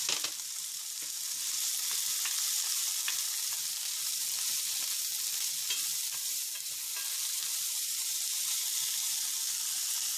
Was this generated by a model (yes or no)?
no